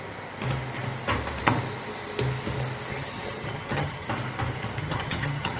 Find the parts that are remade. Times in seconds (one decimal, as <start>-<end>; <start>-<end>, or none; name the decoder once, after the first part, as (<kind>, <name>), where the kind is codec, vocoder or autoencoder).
2.9-4.1 (vocoder, HiFi-GAN); 4.8-5.6